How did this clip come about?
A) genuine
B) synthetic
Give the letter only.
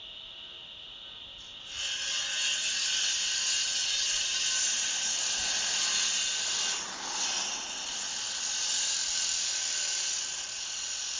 A